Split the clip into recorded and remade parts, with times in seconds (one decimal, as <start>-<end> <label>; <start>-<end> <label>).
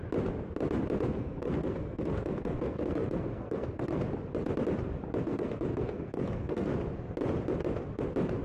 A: 0.0-1.1 recorded; 1.1-4.0 remade; 4.0-5.2 recorded; 5.2-6.7 remade; 6.7-8.4 recorded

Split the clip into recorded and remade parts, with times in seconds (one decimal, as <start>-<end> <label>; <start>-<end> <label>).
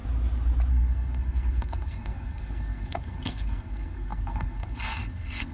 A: 0.0-0.7 recorded; 0.7-5.5 remade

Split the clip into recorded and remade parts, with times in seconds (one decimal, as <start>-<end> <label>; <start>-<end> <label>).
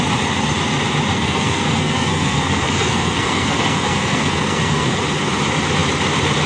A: 0.0-1.1 recorded; 1.1-5.0 remade; 5.0-6.5 recorded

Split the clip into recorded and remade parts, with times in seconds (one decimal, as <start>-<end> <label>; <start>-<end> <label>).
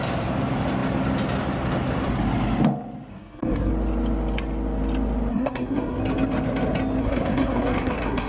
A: 0.0-3.1 recorded; 3.1-3.7 remade; 3.7-5.3 recorded; 5.3-6.0 remade; 6.0-7.0 recorded; 7.0-8.3 remade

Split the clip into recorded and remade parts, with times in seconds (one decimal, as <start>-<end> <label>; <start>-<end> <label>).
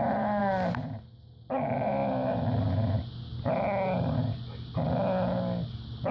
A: 0.0-6.1 recorded